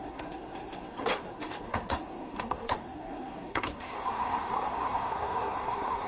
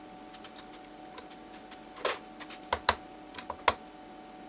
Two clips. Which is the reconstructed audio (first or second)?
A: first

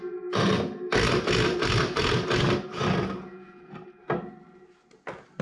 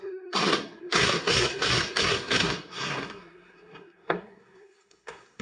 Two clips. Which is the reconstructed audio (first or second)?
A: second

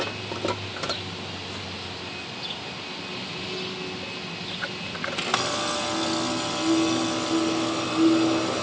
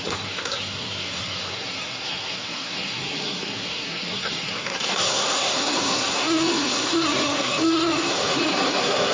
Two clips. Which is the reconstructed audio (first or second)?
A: second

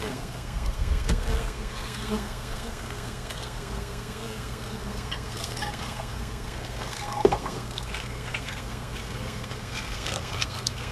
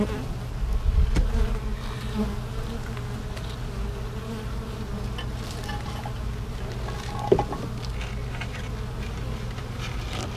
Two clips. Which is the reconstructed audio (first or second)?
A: first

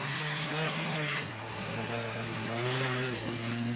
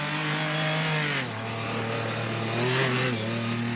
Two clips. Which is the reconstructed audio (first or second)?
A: first